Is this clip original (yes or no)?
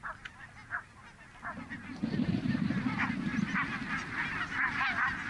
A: yes